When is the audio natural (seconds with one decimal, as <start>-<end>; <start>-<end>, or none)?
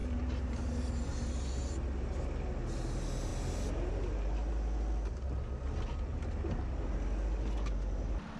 1.1-8.4